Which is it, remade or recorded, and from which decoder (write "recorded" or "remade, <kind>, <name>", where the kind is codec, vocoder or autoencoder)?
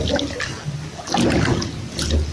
recorded